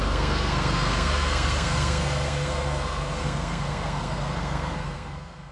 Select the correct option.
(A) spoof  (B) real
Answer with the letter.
A